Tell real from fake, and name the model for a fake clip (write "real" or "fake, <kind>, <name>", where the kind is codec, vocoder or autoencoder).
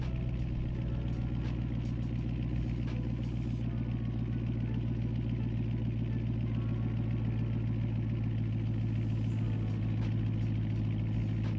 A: real